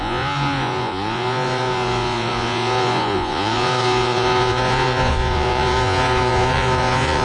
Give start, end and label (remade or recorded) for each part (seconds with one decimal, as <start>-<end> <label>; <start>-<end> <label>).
0.0-7.2 remade